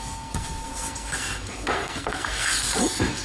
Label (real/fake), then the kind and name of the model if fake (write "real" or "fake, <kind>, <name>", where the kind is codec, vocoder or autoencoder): fake, codec, SNAC